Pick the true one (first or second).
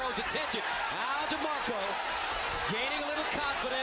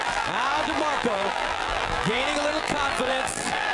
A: first